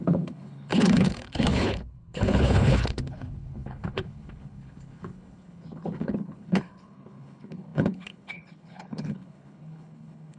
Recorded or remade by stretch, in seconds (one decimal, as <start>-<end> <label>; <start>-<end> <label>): 0.0-10.4 remade